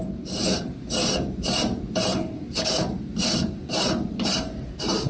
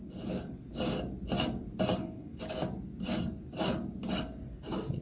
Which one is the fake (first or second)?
first